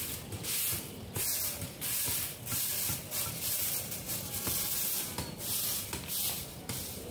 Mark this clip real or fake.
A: real